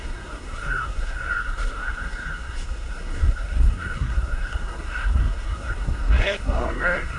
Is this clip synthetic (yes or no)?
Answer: yes